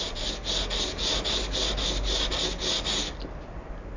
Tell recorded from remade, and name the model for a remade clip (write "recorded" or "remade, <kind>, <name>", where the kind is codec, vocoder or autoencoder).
recorded